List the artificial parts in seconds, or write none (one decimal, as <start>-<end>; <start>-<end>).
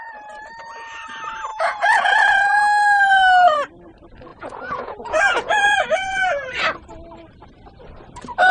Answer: 1.5-2.6; 4.3-6.6